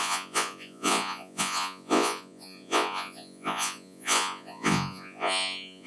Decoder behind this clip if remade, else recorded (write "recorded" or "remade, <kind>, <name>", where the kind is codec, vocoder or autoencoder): remade, vocoder, Vocos